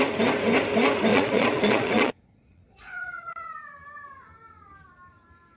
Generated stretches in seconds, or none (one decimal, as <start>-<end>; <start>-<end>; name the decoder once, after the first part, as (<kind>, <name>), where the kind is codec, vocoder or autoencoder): 1.1-3.5 (vocoder, Vocos)